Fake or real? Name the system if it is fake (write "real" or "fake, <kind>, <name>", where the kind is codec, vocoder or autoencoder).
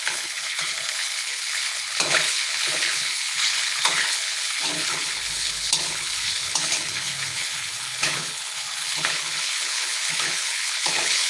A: fake, codec, HILCodec